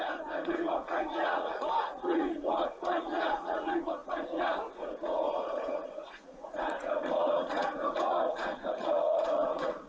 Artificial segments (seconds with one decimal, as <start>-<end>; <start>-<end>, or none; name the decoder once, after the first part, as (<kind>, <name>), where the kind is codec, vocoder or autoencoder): 0.0-9.9 (vocoder, Vocos)